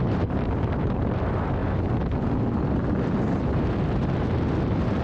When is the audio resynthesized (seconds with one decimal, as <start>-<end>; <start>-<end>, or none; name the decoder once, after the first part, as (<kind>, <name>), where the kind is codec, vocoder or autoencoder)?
0.0-1.1 (vocoder, BigVGAN v2)